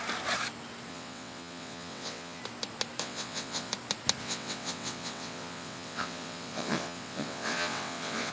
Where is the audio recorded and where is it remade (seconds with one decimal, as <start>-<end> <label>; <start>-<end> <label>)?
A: 0.0-0.9 recorded; 0.9-2.4 remade; 2.4-3.0 recorded; 3.0-3.7 remade; 3.7-4.2 recorded; 4.2-8.3 remade